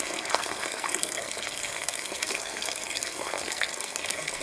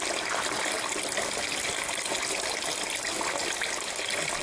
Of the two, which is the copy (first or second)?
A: first